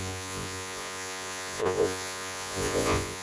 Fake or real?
fake